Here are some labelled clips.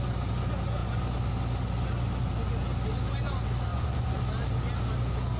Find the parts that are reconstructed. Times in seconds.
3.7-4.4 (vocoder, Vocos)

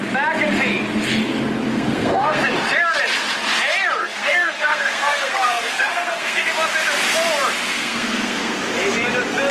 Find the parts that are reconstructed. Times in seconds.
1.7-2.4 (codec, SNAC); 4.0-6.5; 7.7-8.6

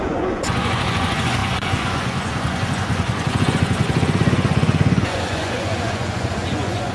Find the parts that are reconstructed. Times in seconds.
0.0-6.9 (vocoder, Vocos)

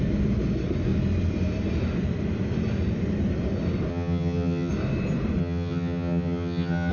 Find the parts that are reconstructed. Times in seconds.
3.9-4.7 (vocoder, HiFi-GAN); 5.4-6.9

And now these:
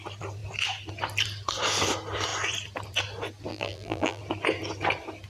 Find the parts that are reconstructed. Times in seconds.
3.5-4.2 (vocoder, BigVGAN v2)

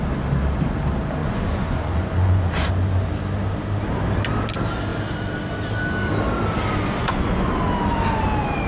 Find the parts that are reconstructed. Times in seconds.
1.2-2.7 (vocoder, Vocos); 7.0-7.5

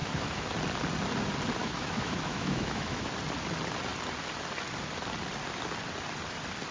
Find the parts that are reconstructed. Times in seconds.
0.0-0.5 (autoencoder, DAC-VAE); 1.6-3.1